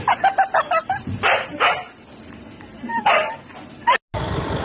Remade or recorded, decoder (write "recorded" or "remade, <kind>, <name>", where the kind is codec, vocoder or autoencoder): recorded